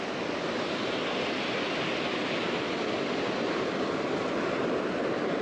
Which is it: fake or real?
real